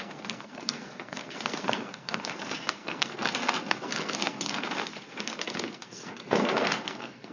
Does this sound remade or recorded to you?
remade